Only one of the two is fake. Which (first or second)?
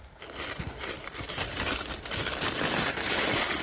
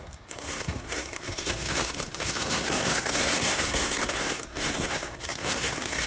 second